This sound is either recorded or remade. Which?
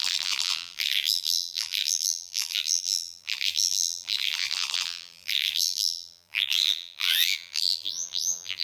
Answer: remade